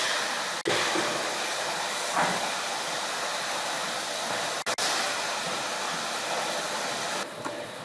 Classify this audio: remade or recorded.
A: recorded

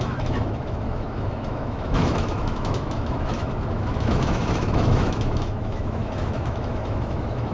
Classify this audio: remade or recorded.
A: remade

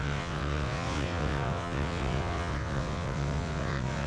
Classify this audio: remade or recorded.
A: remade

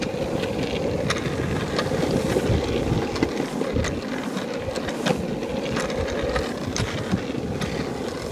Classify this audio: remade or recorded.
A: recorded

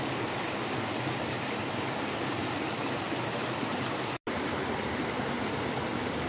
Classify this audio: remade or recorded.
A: recorded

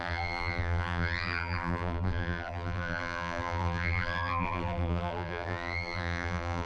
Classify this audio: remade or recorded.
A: remade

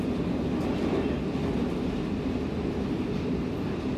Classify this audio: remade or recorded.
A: recorded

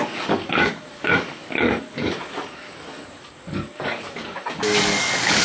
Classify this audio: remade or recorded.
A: remade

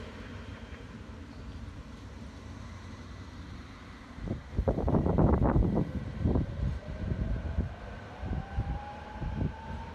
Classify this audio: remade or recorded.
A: remade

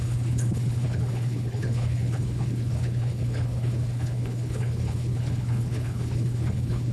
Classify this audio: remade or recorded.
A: remade